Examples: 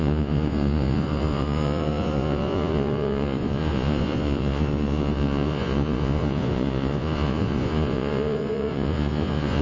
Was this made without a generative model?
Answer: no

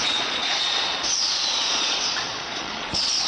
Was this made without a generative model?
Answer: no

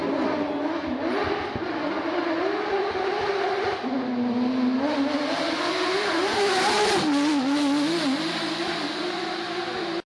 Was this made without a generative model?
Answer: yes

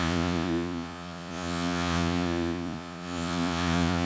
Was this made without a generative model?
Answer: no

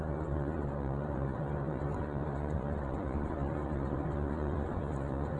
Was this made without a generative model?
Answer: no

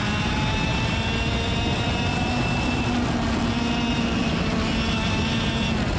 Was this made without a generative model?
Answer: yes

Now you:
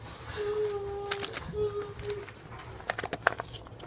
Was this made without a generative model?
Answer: yes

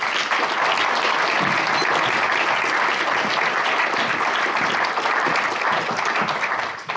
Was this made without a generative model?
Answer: yes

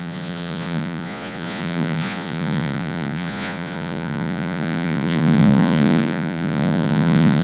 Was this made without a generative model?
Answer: no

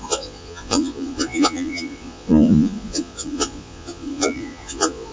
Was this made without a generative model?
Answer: no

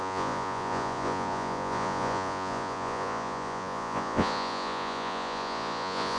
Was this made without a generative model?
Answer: no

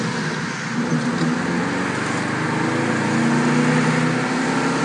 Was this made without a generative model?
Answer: yes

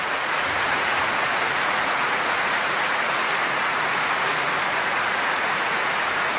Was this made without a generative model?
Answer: no